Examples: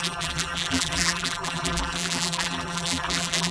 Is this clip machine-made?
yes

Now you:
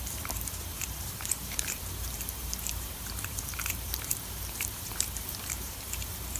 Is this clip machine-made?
yes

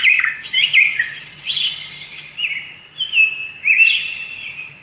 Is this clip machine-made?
yes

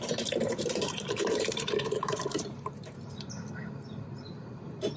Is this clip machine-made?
yes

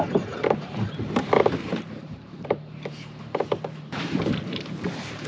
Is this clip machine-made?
yes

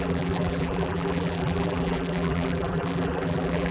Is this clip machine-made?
yes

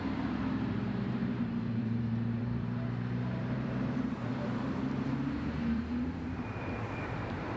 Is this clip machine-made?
yes